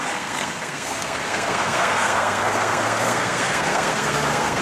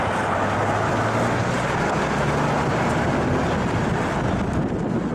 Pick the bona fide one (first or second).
second